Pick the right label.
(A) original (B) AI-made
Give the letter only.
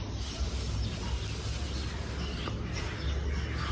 A